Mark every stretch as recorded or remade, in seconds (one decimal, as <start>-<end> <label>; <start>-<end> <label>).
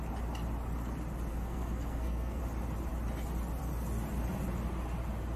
0.0-1.3 recorded; 1.3-2.4 remade; 2.4-5.4 recorded